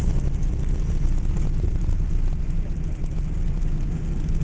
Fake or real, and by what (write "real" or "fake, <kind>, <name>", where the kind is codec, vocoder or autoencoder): fake, vocoder, BigVGAN v2